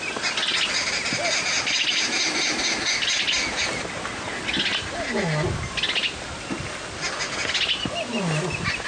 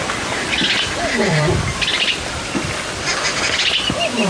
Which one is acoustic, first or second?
first